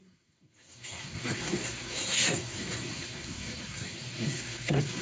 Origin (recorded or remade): remade